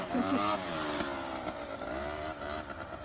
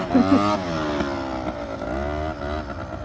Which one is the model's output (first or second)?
first